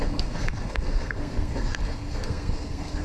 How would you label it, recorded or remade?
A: remade